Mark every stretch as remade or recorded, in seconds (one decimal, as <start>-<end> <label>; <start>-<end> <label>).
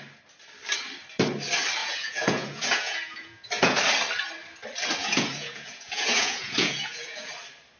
0.0-1.8 recorded; 1.8-3.8 remade; 3.8-5.0 recorded; 5.0-7.3 remade; 7.3-7.8 recorded